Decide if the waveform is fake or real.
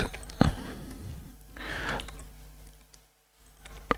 real